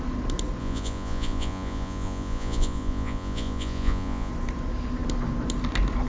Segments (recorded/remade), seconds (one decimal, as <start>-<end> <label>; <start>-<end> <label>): 0.0-0.6 recorded; 0.6-4.3 remade; 4.3-6.1 recorded